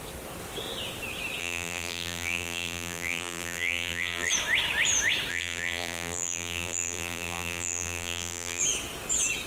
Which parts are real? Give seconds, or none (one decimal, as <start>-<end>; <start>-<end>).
0.0-1.4; 4.3-5.3; 8.6-9.5